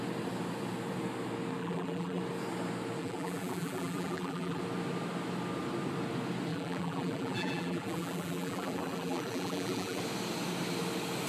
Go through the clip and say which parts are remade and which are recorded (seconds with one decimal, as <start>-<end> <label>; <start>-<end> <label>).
0.0-1.6 recorded; 1.6-2.2 remade; 2.2-3.0 recorded; 3.0-4.6 remade; 4.6-6.5 recorded; 6.5-10.0 remade; 10.0-11.3 recorded